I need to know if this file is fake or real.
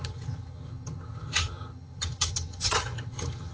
fake